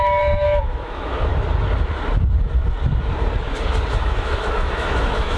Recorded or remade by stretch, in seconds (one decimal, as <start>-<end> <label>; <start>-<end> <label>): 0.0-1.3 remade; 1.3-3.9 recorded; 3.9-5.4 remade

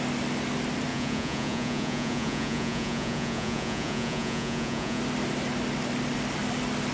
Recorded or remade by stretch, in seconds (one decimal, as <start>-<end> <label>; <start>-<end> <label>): 0.0-0.9 recorded; 0.9-5.0 remade; 5.0-6.9 recorded

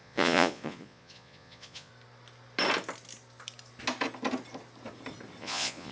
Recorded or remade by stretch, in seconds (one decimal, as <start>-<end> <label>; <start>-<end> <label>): 0.0-1.9 remade; 1.9-5.4 recorded; 5.4-5.9 remade

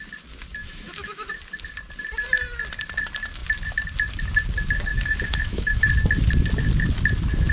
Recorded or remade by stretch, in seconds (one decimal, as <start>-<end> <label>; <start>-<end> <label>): 0.0-0.6 recorded; 0.6-1.3 remade; 1.3-4.9 recorded; 4.9-5.9 remade; 5.9-7.5 recorded